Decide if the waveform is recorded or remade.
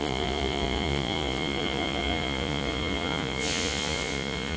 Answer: remade